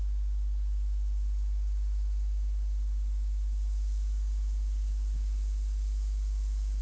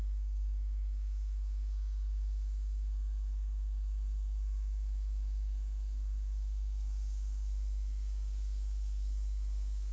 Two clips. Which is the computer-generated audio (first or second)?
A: second